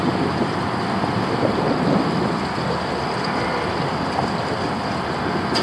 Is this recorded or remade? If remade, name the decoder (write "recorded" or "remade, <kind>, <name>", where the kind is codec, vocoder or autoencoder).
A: recorded